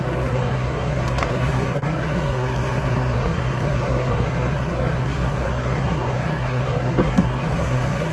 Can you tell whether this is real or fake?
fake